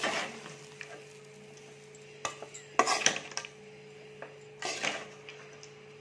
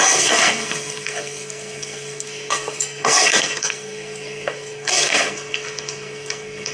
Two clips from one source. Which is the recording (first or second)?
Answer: first